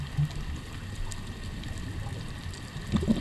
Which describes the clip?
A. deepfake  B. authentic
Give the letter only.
B